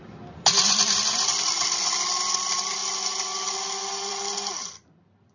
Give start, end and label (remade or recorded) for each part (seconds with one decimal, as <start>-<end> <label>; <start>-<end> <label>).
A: 0.0-5.3 recorded

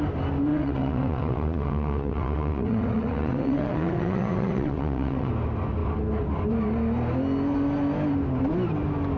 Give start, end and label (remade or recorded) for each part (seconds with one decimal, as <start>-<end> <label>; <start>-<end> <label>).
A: 0.0-0.5 recorded; 0.5-5.3 remade; 5.3-9.2 recorded